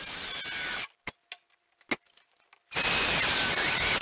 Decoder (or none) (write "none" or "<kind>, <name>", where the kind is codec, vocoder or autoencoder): none